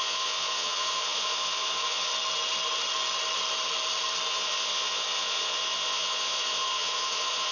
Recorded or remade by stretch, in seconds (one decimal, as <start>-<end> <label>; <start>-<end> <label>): 0.0-2.1 remade; 2.1-4.3 recorded; 4.3-7.5 remade